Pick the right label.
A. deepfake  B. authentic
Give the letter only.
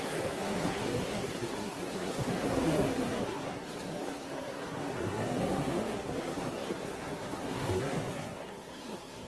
A